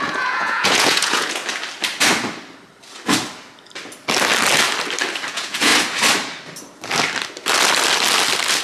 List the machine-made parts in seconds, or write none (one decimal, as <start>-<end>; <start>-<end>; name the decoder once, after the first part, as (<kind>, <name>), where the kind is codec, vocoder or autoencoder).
0.0-1.4 (vocoder, Vocos); 5.3-5.7